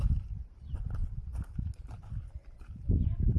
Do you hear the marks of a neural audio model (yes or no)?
no